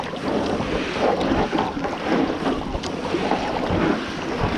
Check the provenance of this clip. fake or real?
real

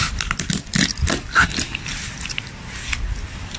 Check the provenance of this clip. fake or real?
real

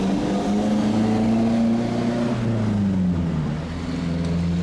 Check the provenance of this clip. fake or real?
real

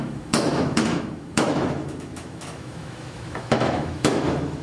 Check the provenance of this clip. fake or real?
fake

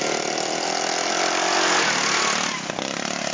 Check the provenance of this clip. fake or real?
real